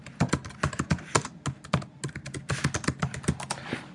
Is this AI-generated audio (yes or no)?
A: no